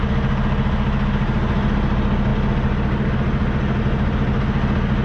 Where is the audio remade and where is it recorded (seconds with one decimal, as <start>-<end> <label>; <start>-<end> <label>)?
0.0-5.0 recorded